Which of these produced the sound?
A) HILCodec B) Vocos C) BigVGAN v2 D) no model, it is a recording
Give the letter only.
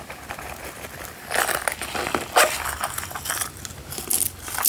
D